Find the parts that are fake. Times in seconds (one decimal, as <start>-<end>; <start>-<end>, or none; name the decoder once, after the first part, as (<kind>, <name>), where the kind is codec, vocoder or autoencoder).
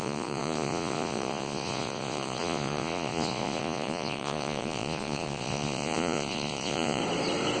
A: 0.0-7.0 (vocoder, Vocos)